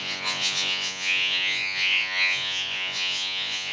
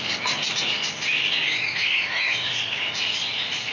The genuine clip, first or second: second